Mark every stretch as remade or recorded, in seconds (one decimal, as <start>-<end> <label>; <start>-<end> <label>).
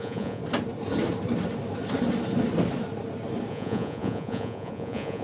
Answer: 0.0-0.4 remade; 0.4-3.5 recorded; 3.5-5.2 remade